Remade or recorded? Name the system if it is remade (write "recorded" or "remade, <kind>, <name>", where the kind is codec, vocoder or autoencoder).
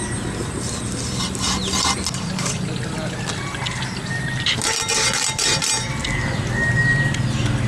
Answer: recorded